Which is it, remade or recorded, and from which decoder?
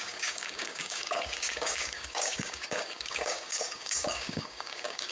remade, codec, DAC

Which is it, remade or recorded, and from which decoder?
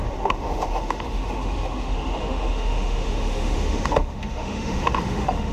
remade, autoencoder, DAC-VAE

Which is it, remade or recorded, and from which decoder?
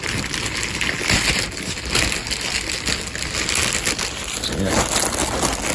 recorded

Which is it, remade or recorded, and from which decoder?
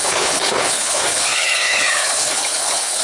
remade, codec, HILCodec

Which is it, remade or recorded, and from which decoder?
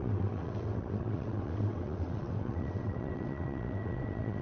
remade, vocoder, WaveNeXt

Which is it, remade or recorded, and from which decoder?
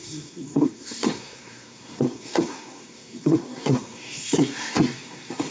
remade, codec, SNAC